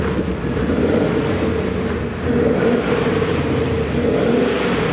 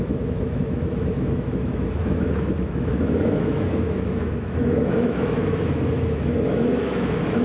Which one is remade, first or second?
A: second